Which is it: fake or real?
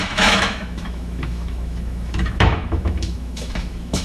fake